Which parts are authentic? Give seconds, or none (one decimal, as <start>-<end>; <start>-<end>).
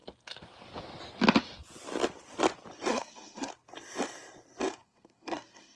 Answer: 0.0-2.9; 3.5-4.8